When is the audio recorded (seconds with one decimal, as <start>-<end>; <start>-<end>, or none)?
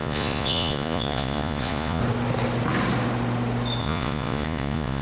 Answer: 2.0-3.8